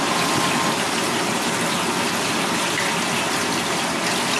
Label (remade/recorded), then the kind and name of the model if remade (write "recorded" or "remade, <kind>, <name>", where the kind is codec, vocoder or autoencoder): recorded